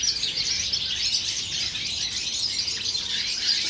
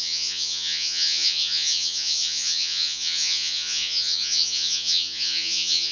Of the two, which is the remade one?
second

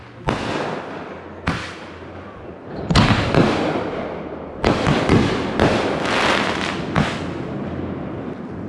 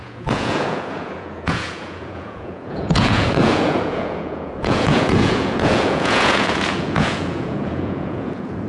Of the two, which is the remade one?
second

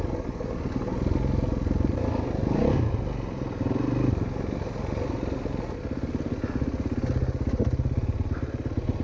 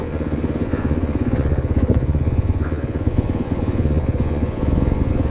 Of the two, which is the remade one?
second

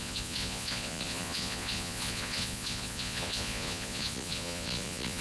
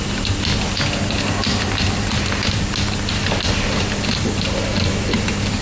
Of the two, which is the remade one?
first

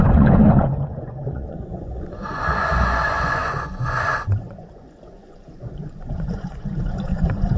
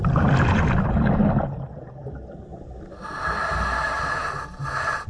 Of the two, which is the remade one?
first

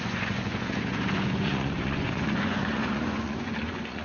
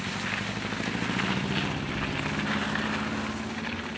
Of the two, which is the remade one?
first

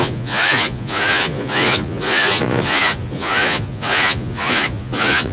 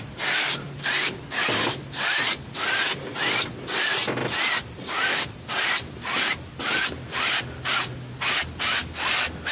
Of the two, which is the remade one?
first